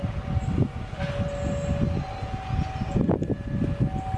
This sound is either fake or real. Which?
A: real